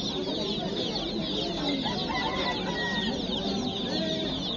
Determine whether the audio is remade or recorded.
recorded